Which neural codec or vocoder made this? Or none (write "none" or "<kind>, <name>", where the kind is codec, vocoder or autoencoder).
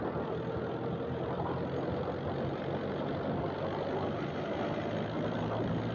none